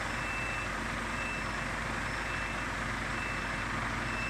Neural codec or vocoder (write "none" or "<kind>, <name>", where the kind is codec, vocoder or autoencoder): none